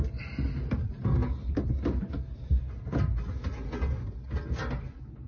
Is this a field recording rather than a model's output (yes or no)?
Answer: yes